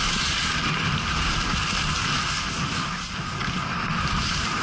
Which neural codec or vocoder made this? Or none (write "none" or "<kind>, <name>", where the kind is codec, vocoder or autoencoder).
none